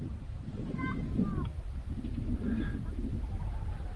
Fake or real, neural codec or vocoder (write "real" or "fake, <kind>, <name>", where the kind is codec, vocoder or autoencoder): fake, vocoder, BigVGAN v2